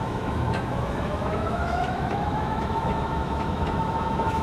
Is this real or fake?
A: fake